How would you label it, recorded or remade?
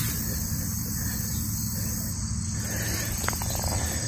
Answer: recorded